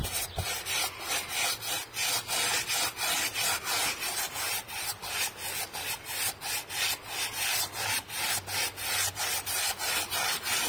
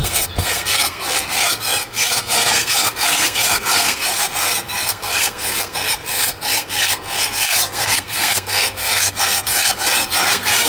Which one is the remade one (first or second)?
second